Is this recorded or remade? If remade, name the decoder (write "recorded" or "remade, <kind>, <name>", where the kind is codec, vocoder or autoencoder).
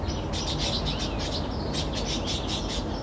recorded